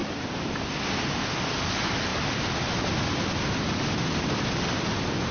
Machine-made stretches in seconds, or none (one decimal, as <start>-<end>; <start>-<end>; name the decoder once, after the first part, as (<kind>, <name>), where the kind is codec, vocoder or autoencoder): none